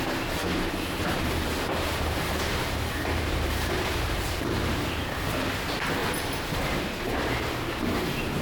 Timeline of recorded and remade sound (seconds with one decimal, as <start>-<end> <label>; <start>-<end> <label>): 0.0-0.4 recorded; 0.4-4.7 remade; 4.7-6.0 recorded; 6.0-6.8 remade; 6.8-8.4 recorded